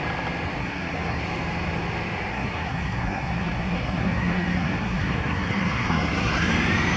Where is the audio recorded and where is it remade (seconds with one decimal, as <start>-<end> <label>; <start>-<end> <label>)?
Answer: 0.0-0.6 recorded; 0.6-1.2 remade; 1.2-2.3 recorded; 2.3-6.5 remade; 6.5-7.0 recorded